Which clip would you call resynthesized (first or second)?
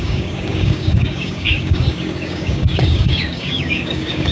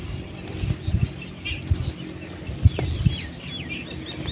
first